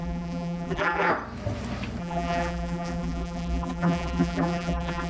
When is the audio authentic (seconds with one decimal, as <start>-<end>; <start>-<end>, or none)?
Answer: 1.1-2.0